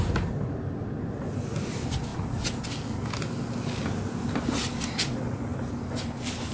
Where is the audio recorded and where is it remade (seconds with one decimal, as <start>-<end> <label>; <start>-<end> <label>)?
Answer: 0.0-6.5 recorded